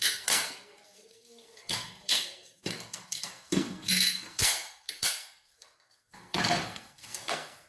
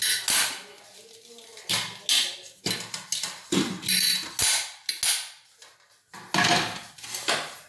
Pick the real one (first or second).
second